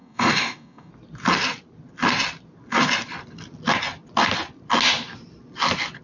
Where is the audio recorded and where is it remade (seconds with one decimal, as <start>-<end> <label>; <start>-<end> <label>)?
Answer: 0.0-0.9 remade; 0.9-6.0 recorded

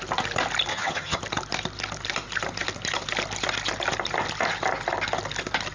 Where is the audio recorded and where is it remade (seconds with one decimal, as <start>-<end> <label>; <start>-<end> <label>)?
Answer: 0.0-0.7 recorded; 0.7-1.2 remade; 1.2-5.7 recorded

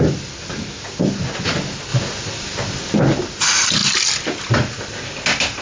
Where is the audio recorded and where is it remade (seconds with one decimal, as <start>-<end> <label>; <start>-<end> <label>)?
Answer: 0.0-5.6 recorded